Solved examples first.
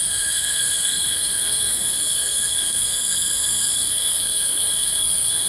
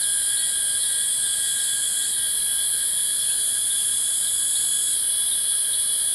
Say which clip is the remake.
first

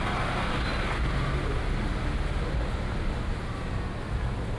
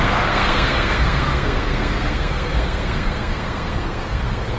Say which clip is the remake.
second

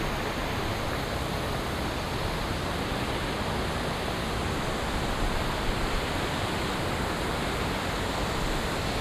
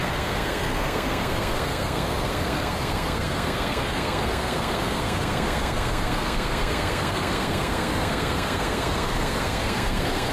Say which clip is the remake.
second